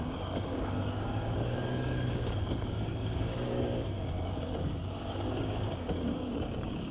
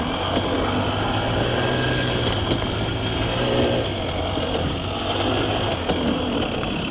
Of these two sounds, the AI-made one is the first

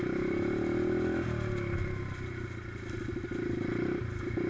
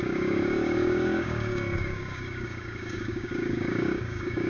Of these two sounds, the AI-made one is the second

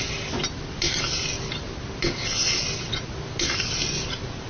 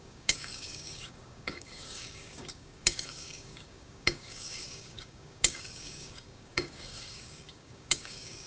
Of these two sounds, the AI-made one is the second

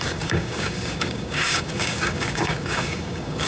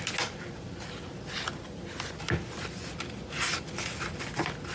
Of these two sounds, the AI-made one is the first